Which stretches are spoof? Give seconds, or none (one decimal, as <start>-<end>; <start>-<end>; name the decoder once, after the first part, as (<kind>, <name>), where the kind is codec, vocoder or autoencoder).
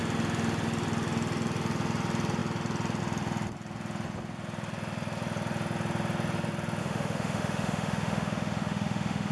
6.8-9.3 (autoencoder, DAC-VAE)